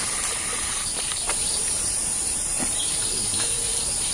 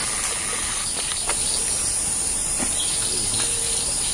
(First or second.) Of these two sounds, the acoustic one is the second